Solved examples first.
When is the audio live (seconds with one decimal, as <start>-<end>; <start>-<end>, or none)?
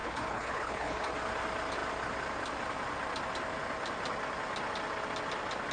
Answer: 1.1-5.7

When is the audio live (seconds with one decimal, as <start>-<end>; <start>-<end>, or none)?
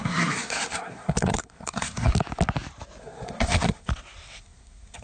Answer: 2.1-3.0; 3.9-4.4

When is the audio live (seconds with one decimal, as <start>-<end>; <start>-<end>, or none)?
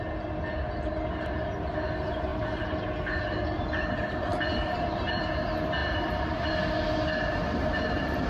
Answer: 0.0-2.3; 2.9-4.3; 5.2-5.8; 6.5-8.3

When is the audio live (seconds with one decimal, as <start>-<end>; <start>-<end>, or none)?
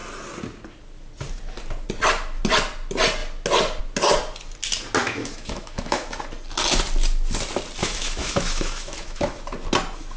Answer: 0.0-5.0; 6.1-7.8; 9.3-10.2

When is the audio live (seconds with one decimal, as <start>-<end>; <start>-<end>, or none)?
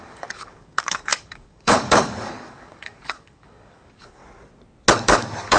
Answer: 4.2-4.9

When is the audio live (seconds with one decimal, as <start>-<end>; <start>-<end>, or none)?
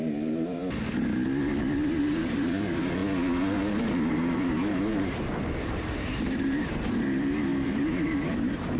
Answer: 0.6-2.0; 3.0-4.1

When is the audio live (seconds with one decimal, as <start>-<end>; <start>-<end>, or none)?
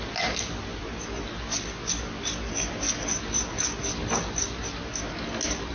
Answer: 0.0-5.7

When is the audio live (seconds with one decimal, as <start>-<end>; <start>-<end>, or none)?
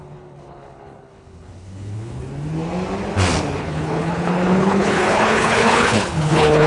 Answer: 2.2-3.6